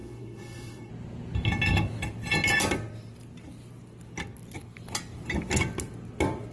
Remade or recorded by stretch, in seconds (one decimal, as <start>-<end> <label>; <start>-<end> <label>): 0.0-0.9 remade; 0.9-6.5 recorded